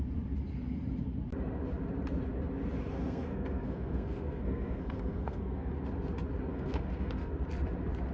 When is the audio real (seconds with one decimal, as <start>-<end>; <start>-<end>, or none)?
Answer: 0.0-2.9; 5.7-6.5; 7.3-8.1